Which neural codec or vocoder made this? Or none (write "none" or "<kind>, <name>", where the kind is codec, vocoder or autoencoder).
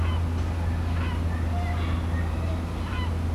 none